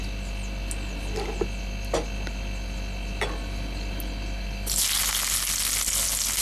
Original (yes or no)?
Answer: yes